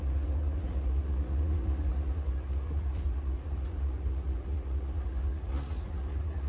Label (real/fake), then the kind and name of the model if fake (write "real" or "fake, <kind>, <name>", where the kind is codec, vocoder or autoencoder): fake, vocoder, Vocos